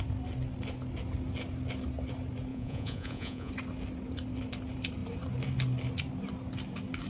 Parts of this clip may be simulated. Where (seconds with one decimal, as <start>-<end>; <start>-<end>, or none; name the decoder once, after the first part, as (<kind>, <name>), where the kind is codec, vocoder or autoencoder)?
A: 2.5-3.5 (vocoder, Vocos)